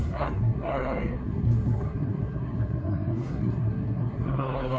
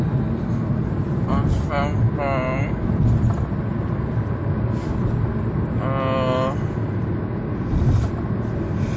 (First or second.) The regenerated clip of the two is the first